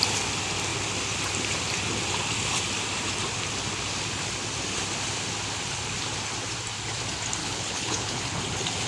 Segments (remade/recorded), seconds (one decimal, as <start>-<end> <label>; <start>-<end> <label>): 0.0-7.4 recorded; 7.4-8.4 remade; 8.4-8.9 recorded